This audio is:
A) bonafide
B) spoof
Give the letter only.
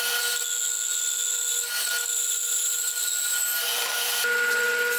A